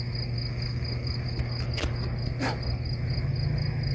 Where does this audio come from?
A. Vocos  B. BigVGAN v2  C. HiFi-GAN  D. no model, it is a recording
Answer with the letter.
D